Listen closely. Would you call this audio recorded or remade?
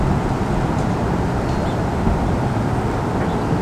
recorded